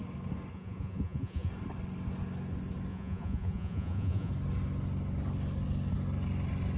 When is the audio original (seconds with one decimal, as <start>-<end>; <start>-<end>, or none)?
0.0-0.5; 1.5-2.9; 4.3-6.8